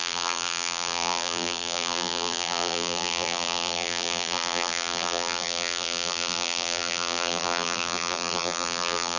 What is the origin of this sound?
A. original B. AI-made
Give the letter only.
B